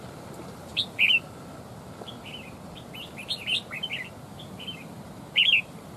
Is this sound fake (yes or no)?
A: no